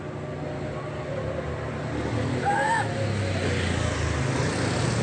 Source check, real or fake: real